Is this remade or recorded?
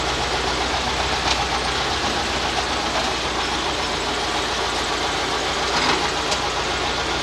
recorded